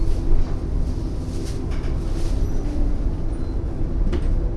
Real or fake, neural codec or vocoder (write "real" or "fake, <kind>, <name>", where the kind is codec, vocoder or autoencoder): real